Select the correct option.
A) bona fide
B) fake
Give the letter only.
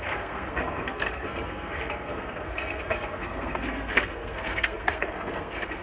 B